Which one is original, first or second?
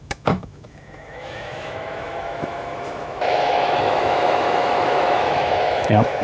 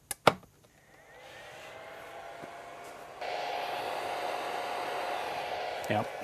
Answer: second